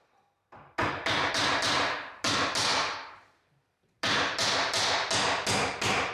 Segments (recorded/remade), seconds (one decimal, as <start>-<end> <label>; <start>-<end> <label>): 0.0-2.7 recorded; 2.7-3.5 remade; 3.5-6.1 recorded